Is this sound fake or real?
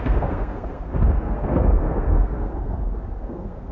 fake